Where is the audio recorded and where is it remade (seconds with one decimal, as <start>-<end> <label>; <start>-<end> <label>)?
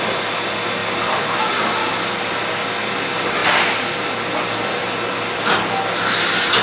0.0-6.6 recorded